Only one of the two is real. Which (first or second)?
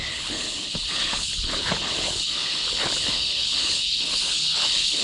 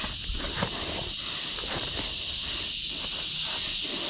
second